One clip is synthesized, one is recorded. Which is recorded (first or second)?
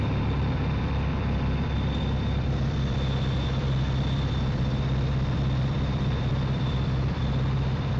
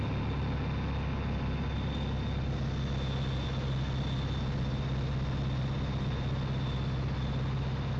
second